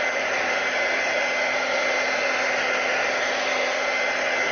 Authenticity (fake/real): real